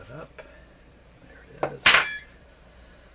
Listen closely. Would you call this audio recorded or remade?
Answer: recorded